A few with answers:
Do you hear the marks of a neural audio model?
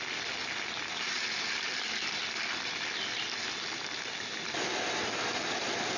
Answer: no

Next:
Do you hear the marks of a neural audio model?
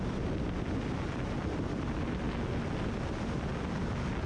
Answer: no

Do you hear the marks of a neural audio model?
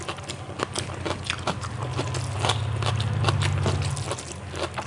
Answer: no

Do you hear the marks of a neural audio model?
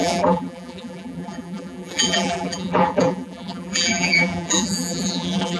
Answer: yes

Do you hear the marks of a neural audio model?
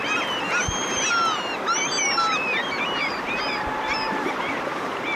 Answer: yes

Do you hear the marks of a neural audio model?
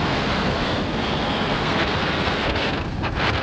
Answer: yes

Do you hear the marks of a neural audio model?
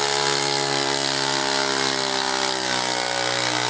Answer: no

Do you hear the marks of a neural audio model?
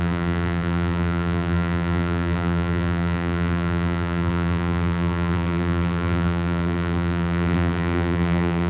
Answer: yes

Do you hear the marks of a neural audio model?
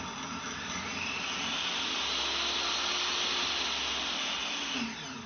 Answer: no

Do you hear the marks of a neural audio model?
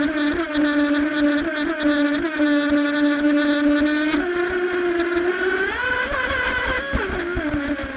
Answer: no